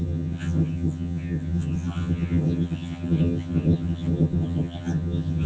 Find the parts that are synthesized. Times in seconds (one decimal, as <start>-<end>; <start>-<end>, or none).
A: 0.0-5.5